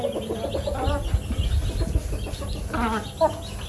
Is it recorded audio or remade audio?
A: recorded